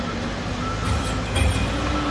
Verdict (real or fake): real